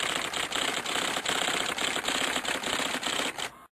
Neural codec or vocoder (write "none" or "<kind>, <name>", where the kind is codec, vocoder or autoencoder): none